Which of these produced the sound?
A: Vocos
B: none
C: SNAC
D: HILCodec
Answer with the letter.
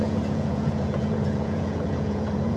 A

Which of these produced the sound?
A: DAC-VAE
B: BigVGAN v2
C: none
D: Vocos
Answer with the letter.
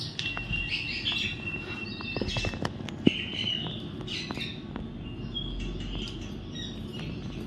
C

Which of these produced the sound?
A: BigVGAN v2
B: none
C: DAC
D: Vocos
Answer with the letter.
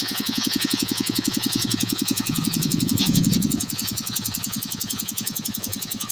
D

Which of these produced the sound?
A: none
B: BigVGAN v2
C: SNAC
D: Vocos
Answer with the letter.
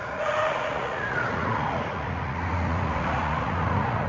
D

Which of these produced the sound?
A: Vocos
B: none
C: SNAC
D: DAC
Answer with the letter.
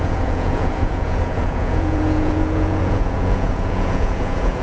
A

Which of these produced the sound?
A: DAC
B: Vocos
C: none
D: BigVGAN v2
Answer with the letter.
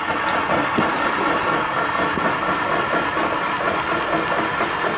C